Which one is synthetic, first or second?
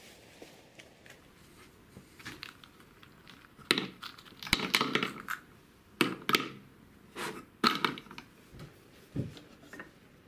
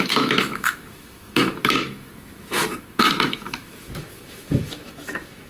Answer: second